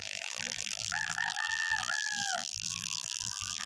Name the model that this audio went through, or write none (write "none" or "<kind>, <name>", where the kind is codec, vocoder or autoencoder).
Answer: vocoder, BigVGAN v2